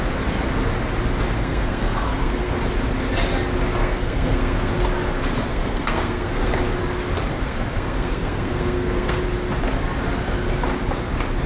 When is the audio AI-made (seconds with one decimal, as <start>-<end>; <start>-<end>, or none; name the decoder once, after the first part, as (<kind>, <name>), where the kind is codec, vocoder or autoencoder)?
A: 1.4-2.5 (codec, SNAC); 3.8-4.7; 5.5-6.5; 7.3-9.2

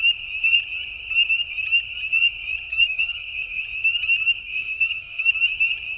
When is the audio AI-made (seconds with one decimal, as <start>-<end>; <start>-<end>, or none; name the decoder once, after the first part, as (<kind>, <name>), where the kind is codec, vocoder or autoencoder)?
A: 2.7-3.6 (codec, SNAC); 4.4-5.3